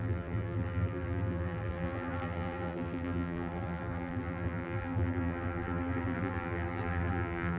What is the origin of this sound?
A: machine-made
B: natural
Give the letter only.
A